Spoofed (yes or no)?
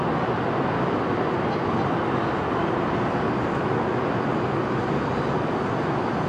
no